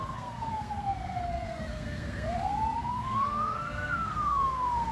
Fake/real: fake